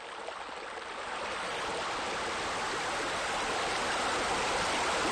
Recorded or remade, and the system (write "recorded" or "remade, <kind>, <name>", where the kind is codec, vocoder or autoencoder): recorded